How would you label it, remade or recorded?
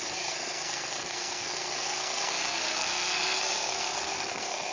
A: remade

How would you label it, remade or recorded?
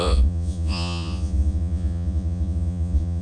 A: remade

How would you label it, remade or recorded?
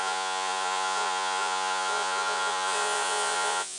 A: remade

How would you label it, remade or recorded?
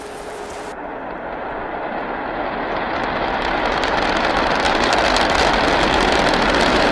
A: recorded